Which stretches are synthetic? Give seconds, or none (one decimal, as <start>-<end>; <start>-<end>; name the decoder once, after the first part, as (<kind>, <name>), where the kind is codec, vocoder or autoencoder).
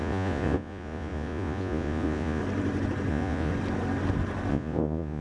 0.0-2.4 (vocoder, Vocos); 3.1-3.5; 4.5-5.2